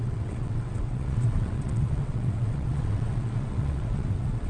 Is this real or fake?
fake